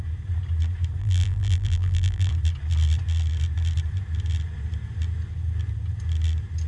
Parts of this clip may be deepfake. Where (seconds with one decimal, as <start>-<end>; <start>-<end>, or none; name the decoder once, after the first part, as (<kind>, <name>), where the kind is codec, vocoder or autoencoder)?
1.0-2.3 (vocoder, BigVGAN v2)